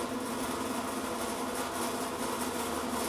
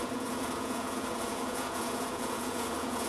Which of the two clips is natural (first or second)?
first